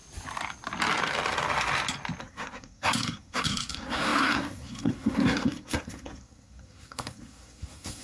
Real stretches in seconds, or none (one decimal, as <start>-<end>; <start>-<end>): 0.0-2.2

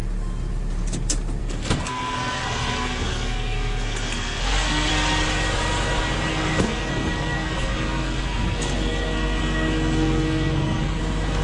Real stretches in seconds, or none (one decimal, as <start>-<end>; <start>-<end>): 0.0-1.4; 4.9-6.3; 11.0-11.4

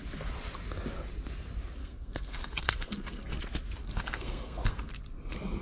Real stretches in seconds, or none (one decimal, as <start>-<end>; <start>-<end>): 0.0-1.8; 3.4-3.8; 4.9-5.6